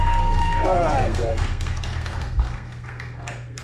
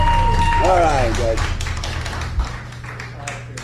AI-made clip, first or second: first